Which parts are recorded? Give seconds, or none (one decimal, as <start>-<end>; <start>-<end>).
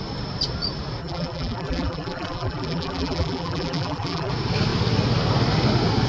0.0-1.0; 4.3-6.1